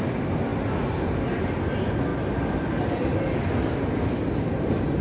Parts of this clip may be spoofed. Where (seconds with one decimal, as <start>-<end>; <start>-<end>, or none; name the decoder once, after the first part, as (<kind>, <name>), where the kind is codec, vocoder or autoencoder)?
none